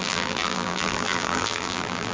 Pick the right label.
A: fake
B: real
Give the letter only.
A